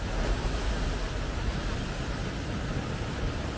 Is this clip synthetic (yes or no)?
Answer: no